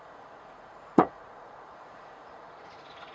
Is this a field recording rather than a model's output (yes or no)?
no